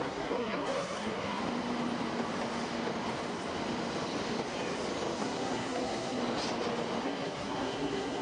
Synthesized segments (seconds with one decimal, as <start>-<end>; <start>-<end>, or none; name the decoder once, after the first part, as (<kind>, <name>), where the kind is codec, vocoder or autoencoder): 0.0-1.4 (codec, SNAC); 5.2-6.2; 7.0-8.2